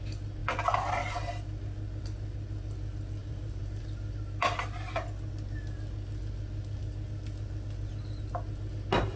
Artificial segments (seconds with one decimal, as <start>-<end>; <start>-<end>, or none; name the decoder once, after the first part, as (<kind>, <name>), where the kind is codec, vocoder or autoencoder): 3.2-3.8 (vocoder, BigVGAN v2)